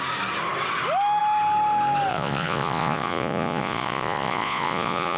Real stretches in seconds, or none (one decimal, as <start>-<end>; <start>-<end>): 0.0-2.1